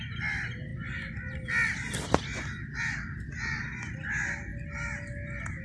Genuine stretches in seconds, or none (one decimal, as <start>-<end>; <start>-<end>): 0.0-5.6